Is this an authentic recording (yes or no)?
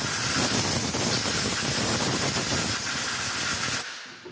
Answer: yes